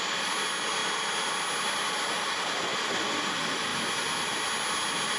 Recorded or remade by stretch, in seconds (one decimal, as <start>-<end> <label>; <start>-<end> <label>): 0.0-2.7 recorded; 2.7-3.3 remade; 3.3-5.2 recorded